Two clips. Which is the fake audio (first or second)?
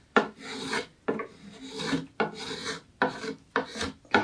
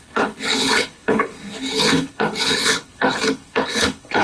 second